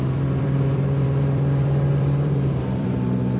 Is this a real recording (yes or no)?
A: no